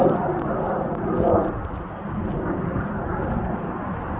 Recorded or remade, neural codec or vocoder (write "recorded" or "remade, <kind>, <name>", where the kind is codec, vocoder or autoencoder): recorded